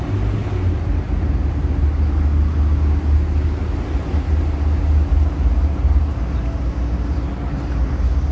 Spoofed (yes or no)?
no